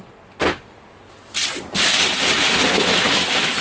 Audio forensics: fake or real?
real